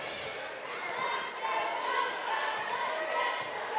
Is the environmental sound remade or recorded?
recorded